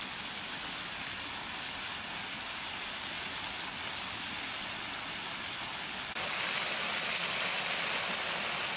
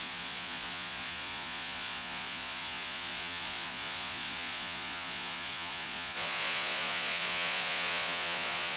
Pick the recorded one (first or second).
first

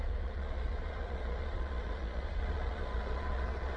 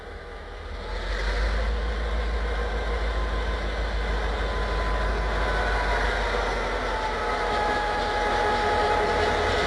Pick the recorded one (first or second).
second